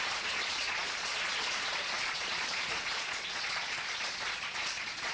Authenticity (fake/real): fake